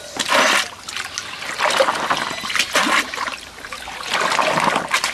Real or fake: real